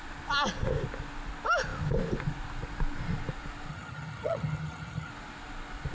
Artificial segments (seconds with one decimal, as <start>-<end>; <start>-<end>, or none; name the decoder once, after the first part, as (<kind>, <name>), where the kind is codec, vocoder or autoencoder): 3.7-5.1 (vocoder, HiFi-GAN)